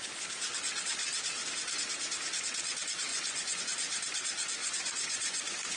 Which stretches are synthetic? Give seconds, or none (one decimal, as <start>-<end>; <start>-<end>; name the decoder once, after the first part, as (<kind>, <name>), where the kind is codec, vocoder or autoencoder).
3.1-3.6 (vocoder, Vocos); 4.6-5.8